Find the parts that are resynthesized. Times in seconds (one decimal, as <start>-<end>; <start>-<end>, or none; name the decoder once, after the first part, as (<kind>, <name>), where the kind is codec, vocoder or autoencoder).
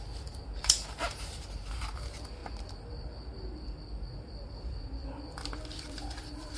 0.0-2.4 (vocoder, BigVGAN v2); 5.9-6.6